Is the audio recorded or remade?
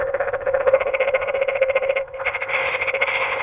remade